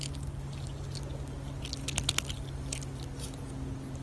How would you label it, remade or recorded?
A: recorded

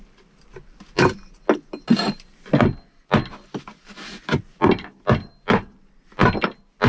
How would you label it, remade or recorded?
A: recorded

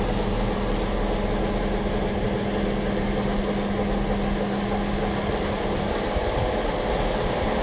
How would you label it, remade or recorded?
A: recorded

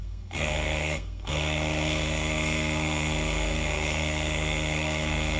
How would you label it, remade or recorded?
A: remade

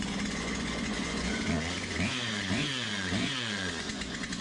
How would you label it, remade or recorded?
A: remade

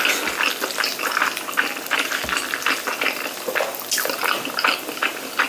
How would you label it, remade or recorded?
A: recorded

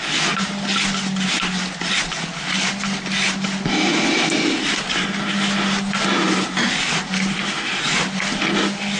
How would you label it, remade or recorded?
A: recorded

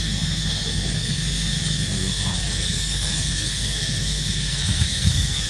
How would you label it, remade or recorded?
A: remade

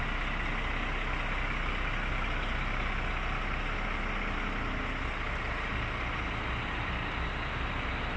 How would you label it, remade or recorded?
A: recorded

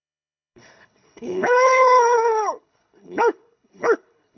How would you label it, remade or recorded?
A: remade